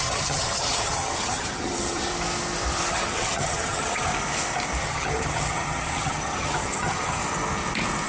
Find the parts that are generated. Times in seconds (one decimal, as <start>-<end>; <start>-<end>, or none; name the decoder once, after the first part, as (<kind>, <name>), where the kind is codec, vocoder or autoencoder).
0.0-2.1 (vocoder, HiFi-GAN); 2.9-4.1; 4.8-7.2

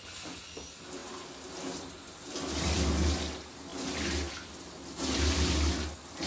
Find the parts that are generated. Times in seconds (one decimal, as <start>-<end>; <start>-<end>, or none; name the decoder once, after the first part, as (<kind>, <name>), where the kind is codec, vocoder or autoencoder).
none

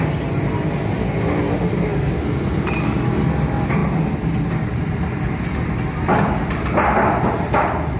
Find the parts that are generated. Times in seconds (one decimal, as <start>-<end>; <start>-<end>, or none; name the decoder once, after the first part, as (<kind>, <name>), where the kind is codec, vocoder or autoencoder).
none

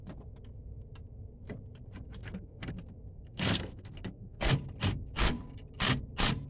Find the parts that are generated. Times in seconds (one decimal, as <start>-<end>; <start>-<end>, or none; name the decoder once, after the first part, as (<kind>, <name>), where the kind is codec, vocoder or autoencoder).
2.2-2.7 (codec, SNAC); 3.1-4.5

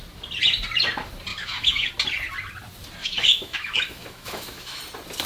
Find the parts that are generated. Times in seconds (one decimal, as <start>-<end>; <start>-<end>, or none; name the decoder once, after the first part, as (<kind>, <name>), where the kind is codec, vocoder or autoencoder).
1.3-1.9 (autoencoder, DAC-VAE); 3.0-4.8

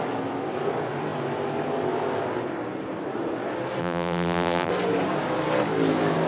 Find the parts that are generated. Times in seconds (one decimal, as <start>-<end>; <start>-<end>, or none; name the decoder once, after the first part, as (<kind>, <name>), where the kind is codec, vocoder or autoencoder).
3.8-4.7 (vocoder, BigVGAN v2)

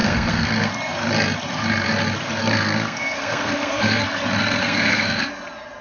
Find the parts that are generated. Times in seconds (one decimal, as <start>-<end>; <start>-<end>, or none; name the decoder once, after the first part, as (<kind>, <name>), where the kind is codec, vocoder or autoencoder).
0.0-0.7 (codec, SNAC); 2.4-4.0; 4.6-5.3

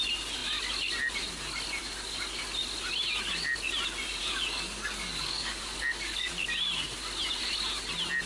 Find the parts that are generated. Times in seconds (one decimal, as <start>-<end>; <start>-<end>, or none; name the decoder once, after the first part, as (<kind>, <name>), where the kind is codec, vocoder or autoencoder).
4.2-6.3 (codec, DAC)